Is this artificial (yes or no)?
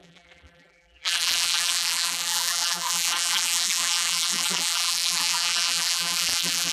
yes